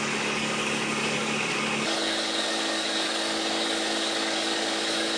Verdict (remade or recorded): remade